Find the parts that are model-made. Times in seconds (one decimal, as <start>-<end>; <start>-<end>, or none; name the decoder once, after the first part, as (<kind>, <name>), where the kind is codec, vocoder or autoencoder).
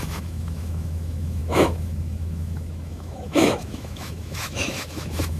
0.0-5.4 (autoencoder, DAC-VAE)